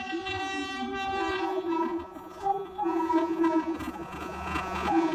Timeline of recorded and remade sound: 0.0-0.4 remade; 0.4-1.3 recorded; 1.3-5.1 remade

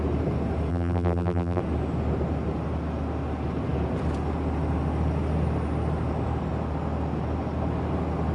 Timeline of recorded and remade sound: 0.0-0.7 recorded; 0.7-1.6 remade; 1.6-8.3 recorded

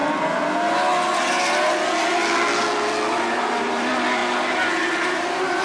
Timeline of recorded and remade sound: 0.0-3.4 recorded; 3.4-4.2 remade; 4.2-4.7 recorded; 4.7-5.6 remade